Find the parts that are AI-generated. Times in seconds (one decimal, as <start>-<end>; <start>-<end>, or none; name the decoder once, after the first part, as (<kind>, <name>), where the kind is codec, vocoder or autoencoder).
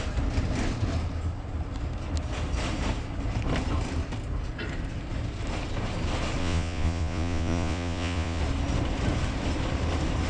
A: 6.4-8.4 (vocoder, Vocos)